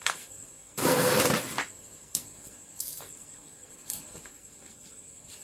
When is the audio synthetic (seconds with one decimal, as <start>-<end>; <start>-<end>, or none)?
0.0-1.1; 1.7-5.4